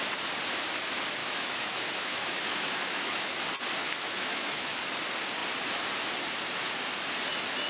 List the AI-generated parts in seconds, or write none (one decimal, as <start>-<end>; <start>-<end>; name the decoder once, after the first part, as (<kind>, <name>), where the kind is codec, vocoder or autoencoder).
1.2-3.4 (autoencoder, DAC-VAE); 3.8-4.8